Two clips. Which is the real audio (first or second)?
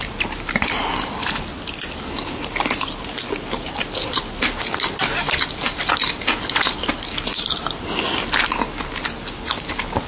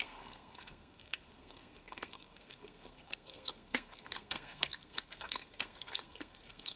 first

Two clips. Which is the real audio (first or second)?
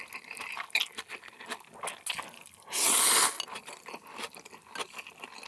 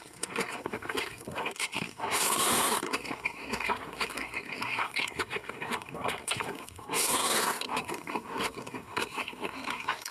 first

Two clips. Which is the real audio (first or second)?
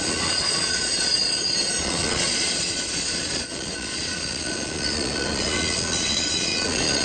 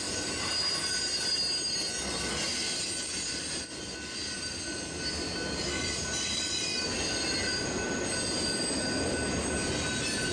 second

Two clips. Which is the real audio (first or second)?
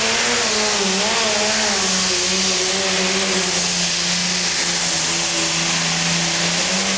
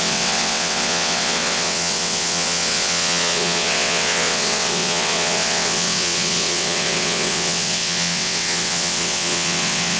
first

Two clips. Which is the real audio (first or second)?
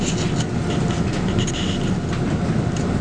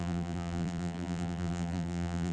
first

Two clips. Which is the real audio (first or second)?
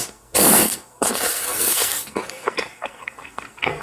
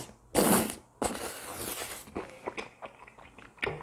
second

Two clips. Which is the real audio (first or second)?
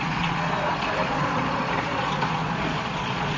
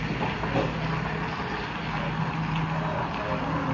second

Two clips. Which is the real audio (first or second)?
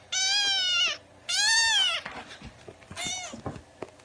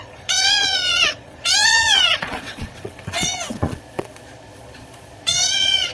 first